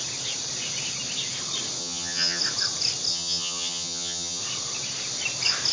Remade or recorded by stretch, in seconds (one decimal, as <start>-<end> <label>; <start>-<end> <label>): 0.0-1.8 recorded; 1.8-2.4 remade; 2.4-3.1 recorded; 3.1-4.4 remade; 4.4-5.7 recorded